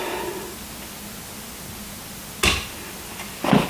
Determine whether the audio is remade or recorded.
recorded